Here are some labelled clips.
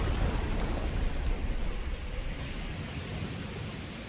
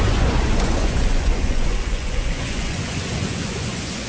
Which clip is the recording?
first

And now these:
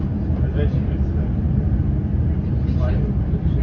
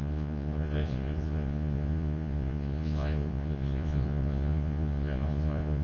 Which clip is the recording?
first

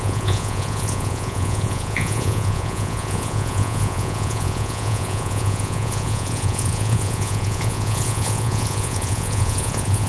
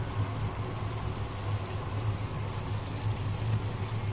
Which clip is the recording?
second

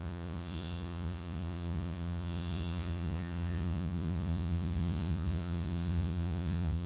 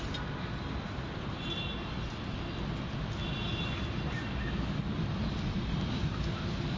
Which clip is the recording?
second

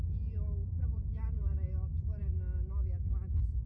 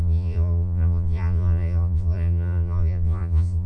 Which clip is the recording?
first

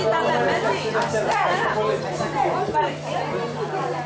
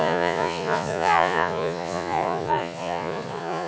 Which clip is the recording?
first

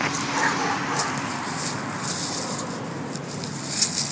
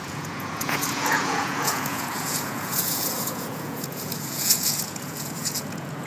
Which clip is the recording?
first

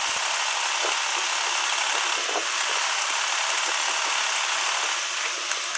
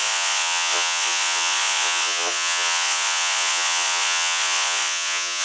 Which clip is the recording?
first